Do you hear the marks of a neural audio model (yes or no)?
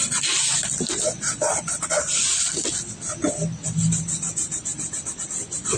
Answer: no